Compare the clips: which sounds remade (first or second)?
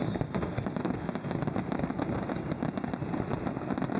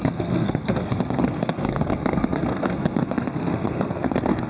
second